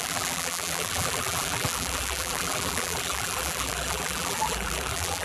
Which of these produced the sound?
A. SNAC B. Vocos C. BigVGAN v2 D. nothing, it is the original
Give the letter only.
C